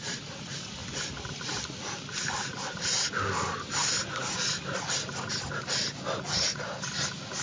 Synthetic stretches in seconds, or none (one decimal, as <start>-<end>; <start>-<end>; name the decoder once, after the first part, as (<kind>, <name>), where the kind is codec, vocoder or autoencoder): none